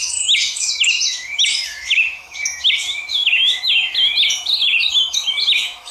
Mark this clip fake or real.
fake